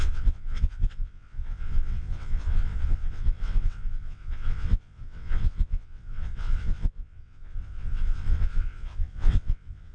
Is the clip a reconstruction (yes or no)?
yes